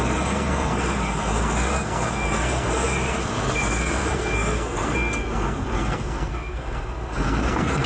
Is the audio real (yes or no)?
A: no